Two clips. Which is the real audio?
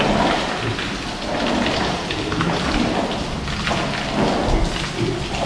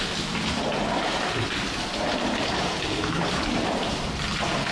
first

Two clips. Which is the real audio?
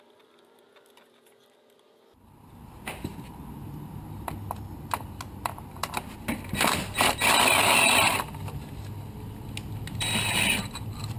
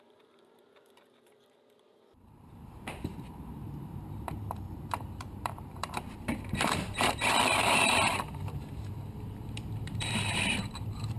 first